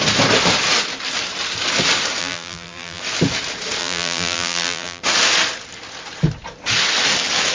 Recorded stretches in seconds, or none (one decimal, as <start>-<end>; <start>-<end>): 0.0-2.2; 3.0-3.8; 5.0-7.5